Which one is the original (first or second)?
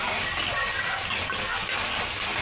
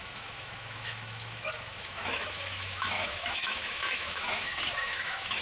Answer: first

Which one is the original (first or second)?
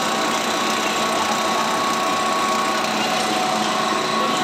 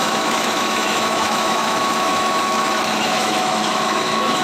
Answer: first